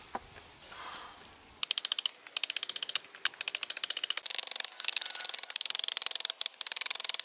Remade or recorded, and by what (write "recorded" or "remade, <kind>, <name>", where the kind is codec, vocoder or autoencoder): recorded